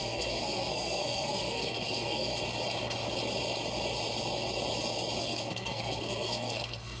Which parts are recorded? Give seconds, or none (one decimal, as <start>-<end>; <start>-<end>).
2.3-5.2